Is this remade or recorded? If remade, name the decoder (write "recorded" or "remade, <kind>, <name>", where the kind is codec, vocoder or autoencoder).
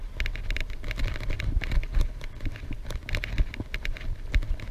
recorded